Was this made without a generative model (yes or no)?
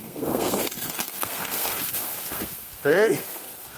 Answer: no